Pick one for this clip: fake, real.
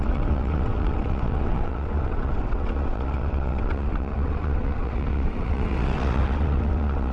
fake